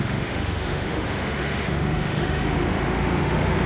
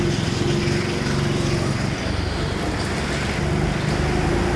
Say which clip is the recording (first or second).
second